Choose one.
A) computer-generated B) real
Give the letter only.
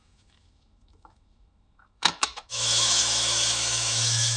A